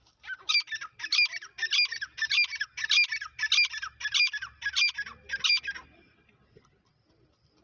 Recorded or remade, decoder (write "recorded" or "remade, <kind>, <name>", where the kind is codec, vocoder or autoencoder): recorded